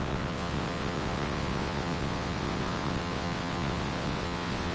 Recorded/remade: remade